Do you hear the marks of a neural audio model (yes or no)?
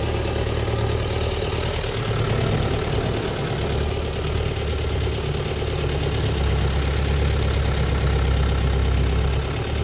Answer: no